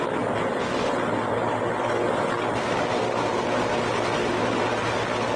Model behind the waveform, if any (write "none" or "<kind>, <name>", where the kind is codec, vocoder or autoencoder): none